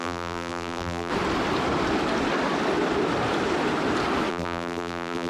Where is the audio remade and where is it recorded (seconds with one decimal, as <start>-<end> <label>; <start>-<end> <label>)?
0.0-1.1 remade; 1.1-4.3 recorded; 4.3-5.3 remade